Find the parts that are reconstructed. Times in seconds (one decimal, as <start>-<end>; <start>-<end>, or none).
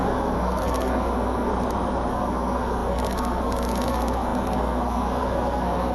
0.0-1.5; 2.1-5.9